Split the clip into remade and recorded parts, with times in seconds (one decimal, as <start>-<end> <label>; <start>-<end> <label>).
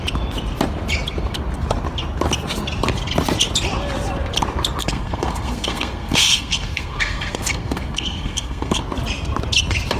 0.0-4.8 recorded; 4.8-8.8 remade; 8.8-10.0 recorded